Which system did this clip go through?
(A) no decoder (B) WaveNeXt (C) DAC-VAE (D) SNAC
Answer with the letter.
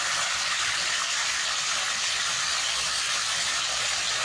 A